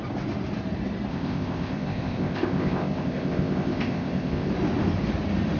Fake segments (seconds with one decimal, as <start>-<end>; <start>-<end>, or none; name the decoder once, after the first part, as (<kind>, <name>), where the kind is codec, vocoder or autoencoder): 1.1-4.5 (codec, ZipCodec)